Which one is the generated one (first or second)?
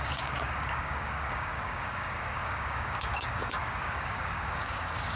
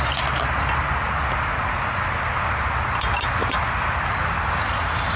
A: first